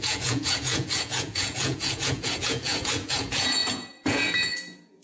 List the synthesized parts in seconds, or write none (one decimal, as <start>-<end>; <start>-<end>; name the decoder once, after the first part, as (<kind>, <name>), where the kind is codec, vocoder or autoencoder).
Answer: 0.0-5.0 (vocoder, Vocos)

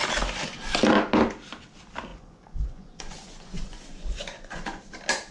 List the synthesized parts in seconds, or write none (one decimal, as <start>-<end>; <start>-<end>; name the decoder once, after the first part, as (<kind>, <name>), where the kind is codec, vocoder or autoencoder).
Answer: 2.1-4.8 (vocoder, Vocos)

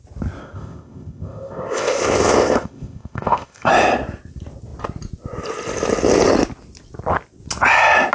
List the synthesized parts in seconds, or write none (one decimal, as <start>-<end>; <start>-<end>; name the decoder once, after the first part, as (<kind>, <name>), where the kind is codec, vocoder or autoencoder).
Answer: 0.4-3.7 (codec, ZipCodec)

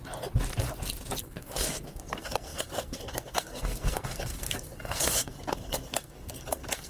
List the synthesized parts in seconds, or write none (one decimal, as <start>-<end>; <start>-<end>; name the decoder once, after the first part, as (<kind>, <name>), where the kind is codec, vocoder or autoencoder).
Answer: 1.2-6.9 (codec, SNAC)

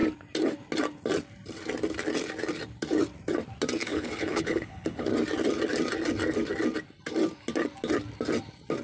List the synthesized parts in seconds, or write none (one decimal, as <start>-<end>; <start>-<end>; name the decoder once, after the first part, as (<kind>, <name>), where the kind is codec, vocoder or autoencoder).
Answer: 3.8-5.1 (codec, HILCodec)